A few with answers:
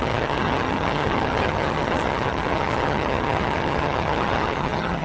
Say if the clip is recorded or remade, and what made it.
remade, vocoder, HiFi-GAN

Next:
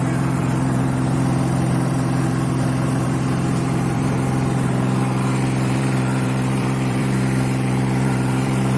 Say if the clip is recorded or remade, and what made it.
remade, vocoder, BigVGAN v2